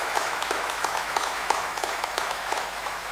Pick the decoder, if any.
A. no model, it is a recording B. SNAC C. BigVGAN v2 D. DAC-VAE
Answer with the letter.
D